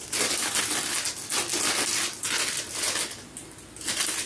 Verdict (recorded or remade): recorded